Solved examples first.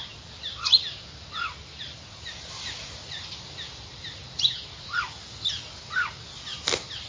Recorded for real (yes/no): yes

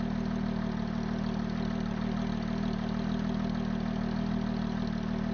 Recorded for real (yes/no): yes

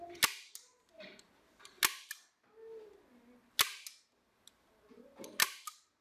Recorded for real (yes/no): yes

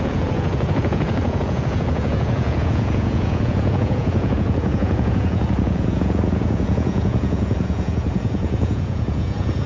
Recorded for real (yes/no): no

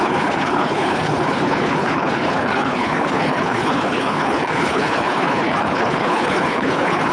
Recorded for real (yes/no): no